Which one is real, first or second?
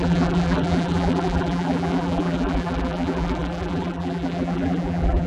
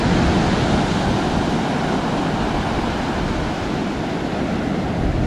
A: second